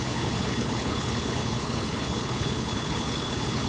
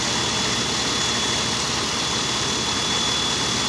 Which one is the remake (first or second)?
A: first